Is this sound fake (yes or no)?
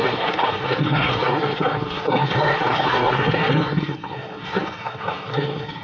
yes